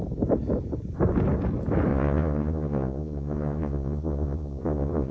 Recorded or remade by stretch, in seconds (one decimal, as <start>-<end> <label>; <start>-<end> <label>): 0.0-1.9 recorded; 1.9-5.1 remade